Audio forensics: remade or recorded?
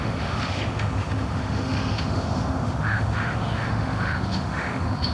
remade